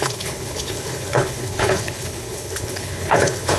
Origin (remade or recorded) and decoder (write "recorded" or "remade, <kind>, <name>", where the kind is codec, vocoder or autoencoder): remade, codec, HILCodec